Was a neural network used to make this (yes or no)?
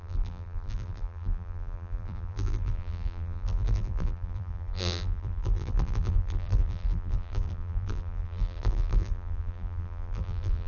yes